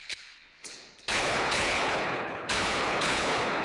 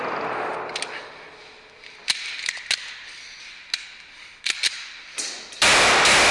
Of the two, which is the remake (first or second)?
first